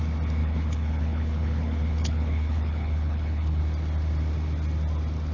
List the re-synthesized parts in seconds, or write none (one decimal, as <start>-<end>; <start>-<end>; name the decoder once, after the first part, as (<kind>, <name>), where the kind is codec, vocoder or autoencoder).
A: 0.4-3.6 (codec, HILCodec)